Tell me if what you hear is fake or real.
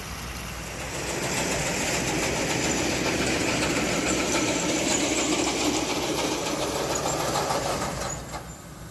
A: real